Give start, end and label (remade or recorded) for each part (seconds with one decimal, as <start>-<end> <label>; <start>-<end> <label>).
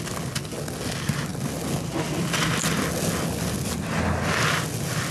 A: 0.0-5.1 recorded